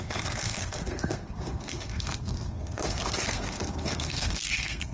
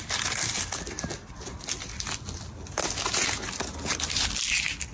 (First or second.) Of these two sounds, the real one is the second